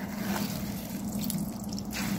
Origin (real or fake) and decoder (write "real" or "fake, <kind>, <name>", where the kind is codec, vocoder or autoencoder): fake, vocoder, BigVGAN v2